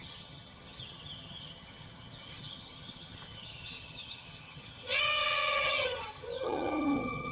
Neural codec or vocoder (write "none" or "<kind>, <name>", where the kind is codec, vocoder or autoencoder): vocoder, HiFi-GAN